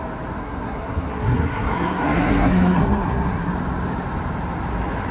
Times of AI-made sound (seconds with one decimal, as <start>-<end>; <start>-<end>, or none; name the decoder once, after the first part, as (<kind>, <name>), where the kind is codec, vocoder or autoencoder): 0.4-3.5 (codec, SNAC)